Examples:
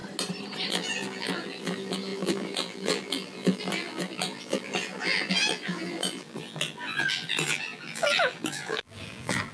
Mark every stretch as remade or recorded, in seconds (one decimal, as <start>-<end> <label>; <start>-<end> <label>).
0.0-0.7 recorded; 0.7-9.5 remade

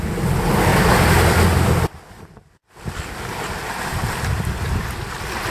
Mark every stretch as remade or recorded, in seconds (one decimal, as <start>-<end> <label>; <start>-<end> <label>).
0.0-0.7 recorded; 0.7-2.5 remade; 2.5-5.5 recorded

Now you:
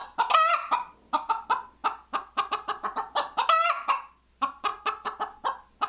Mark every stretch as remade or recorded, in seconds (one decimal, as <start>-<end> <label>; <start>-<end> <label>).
0.0-5.9 recorded

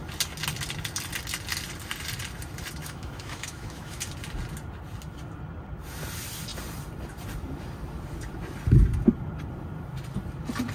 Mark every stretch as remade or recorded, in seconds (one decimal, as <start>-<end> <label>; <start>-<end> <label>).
0.0-2.8 recorded; 2.8-4.0 remade; 4.0-10.7 recorded